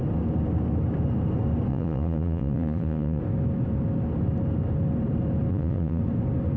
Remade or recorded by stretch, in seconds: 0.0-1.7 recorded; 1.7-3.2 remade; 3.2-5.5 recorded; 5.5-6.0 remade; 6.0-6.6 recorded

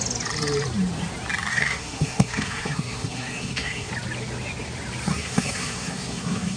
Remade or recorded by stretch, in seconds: 0.0-1.5 recorded; 1.5-3.9 remade; 3.9-5.1 recorded; 5.1-6.6 remade